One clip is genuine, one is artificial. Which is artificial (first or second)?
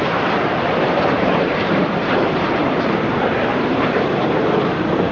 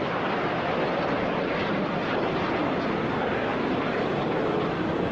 first